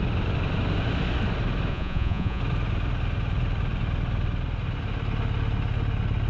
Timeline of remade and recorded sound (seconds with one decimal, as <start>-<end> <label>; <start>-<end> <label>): 0.0-1.7 recorded; 1.7-2.4 remade; 2.4-6.3 recorded